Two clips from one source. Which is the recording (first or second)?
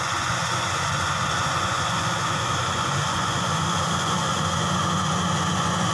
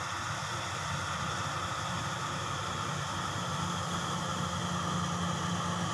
second